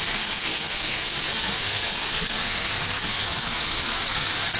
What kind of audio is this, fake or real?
fake